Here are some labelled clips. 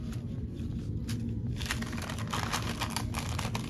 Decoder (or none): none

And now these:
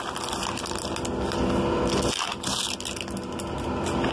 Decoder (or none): none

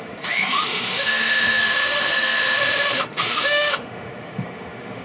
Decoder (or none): autoencoder, DAC-VAE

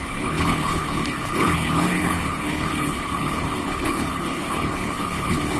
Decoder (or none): codec, HILCodec